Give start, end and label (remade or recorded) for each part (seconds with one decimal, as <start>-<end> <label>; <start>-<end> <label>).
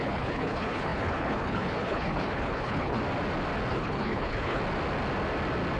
0.0-3.0 remade; 3.0-3.7 recorded; 3.7-4.6 remade; 4.6-5.8 recorded